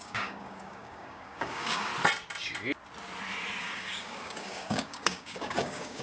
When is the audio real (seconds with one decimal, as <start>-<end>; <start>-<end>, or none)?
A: 1.9-3.6